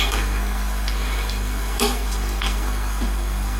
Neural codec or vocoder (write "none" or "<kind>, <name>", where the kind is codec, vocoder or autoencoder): codec, SNAC